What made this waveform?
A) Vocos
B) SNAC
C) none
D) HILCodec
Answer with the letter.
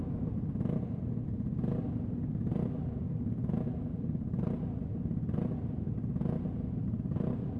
C